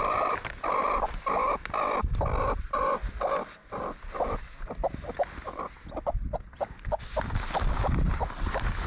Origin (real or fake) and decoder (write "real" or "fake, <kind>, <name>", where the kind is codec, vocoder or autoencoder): real